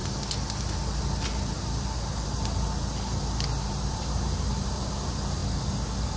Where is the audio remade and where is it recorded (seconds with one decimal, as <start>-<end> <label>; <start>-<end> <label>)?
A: 0.0-3.7 recorded; 3.7-5.4 remade; 5.4-6.2 recorded